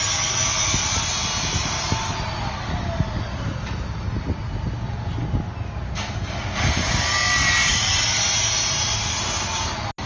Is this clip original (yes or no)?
yes